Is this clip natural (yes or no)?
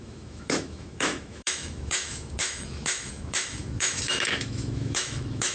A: no